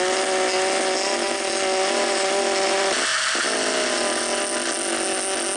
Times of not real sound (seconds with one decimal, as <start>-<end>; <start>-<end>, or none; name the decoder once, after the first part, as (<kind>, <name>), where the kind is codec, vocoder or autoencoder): none